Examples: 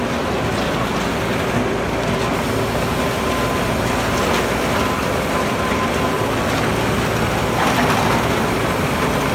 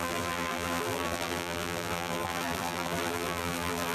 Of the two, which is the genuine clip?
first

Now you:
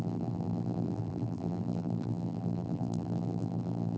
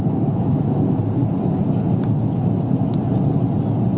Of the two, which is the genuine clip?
second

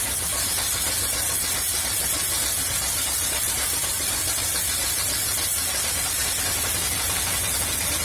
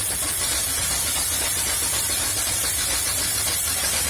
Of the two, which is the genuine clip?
first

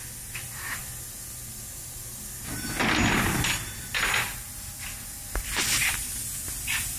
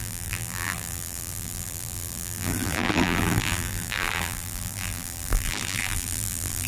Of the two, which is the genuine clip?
first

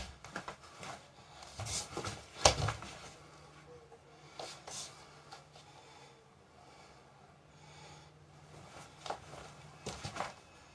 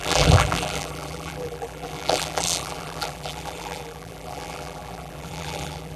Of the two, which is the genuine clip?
first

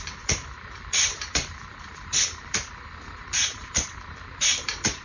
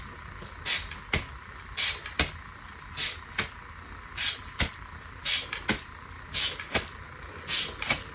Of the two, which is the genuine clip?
second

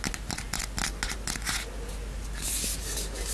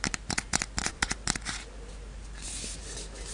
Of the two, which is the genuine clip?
first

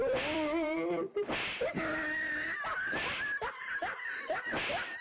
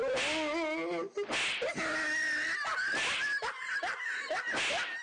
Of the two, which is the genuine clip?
second